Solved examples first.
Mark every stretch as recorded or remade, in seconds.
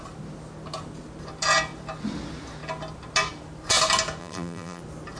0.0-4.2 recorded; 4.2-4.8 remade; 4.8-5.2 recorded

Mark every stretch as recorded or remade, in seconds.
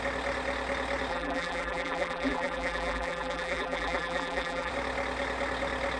0.0-1.1 recorded; 1.1-4.7 remade; 4.7-6.0 recorded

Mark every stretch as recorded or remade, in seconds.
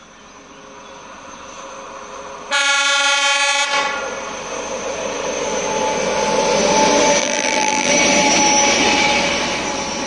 0.0-7.2 recorded; 7.2-7.9 remade; 7.9-10.1 recorded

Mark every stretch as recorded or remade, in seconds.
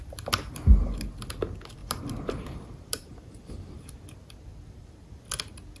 0.0-1.8 recorded; 1.8-3.9 remade; 3.9-4.5 recorded; 4.5-5.1 remade; 5.1-5.8 recorded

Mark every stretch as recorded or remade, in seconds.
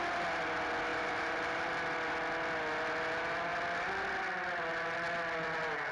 0.0-0.9 recorded; 0.9-1.7 remade; 1.7-5.9 recorded